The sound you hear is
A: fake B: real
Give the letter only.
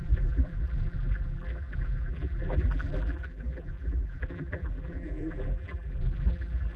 A